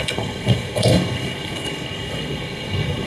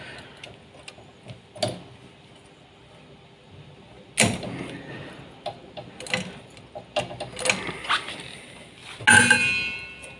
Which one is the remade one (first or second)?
first